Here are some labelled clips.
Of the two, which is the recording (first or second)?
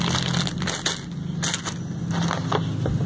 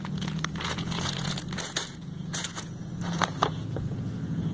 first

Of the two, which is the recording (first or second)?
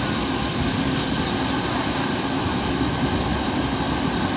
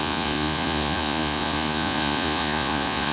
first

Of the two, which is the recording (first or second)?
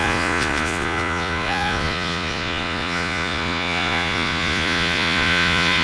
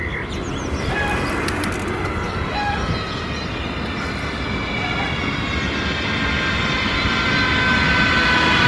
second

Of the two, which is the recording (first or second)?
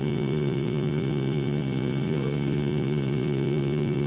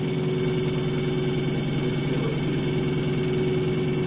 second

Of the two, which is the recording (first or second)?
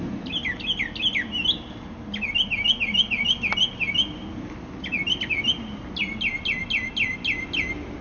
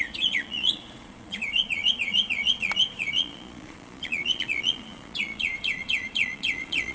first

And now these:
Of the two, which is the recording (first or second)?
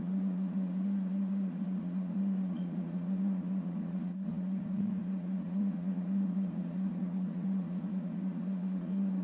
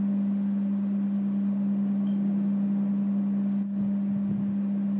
second